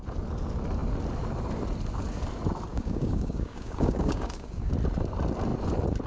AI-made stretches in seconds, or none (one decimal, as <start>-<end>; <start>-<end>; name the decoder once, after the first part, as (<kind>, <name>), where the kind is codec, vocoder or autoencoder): 2.7-4.7 (codec, DAC)